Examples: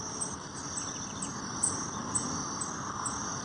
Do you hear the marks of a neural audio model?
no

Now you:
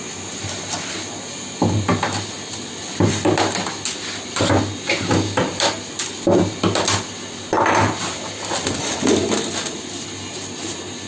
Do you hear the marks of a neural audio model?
no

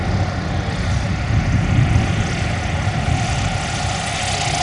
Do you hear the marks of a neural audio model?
no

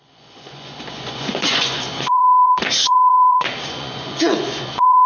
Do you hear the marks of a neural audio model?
yes